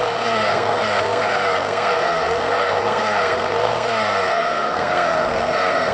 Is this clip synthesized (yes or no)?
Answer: yes